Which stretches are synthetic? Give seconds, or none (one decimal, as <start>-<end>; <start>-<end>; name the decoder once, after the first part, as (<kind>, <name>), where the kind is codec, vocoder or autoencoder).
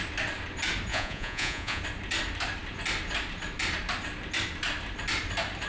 0.9-1.8 (vocoder, Vocos)